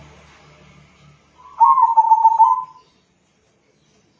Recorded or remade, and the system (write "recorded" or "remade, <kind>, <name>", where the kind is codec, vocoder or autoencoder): recorded